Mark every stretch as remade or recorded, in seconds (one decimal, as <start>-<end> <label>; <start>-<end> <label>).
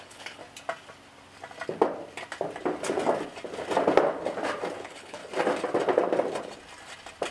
0.0-0.4 remade; 0.4-4.8 recorded; 4.8-5.2 remade; 5.2-7.3 recorded